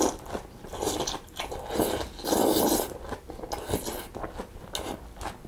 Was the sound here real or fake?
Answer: real